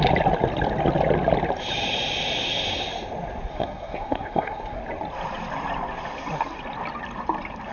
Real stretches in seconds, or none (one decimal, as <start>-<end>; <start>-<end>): 0.0-3.5; 4.8-7.7